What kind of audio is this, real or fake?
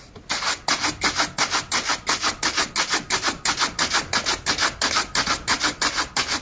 real